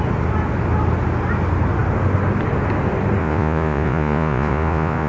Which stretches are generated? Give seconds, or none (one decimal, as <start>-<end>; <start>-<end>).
3.2-5.1